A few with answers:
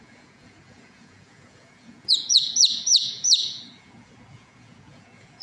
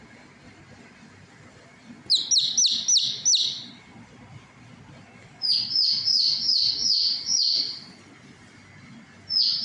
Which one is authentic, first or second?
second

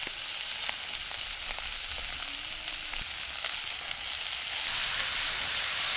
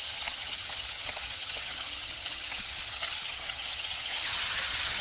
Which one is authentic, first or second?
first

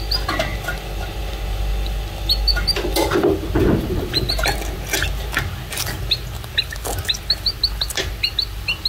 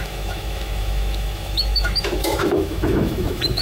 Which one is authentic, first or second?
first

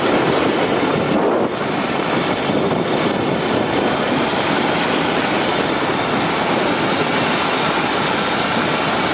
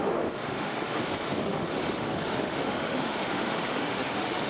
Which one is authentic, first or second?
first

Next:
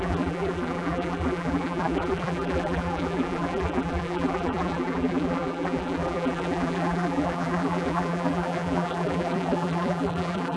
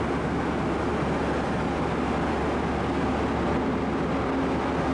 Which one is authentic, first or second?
second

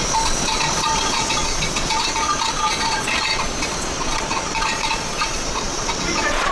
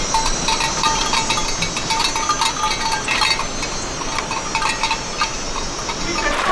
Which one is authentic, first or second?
second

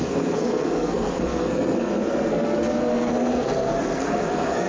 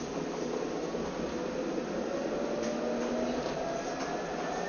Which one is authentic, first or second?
second